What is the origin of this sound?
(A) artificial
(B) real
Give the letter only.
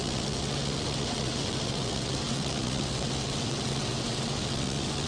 A